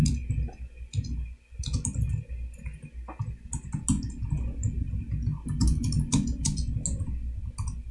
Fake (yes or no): no